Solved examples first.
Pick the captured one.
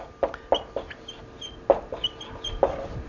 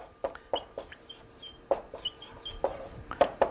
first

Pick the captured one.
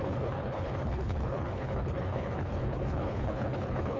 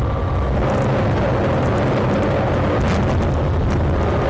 second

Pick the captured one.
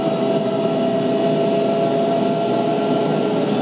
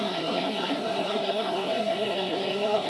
first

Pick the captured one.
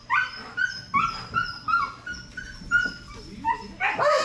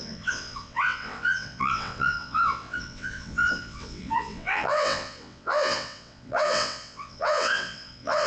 first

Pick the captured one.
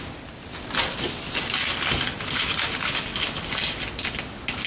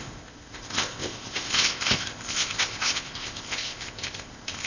first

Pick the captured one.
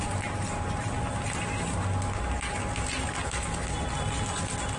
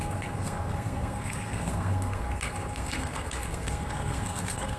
first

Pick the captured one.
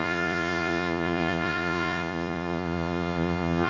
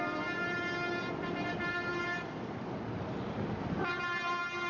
second